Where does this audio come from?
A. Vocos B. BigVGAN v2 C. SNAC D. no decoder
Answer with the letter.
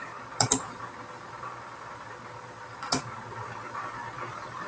B